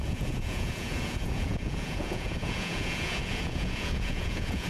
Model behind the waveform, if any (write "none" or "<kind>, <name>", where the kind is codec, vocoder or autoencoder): vocoder, Vocos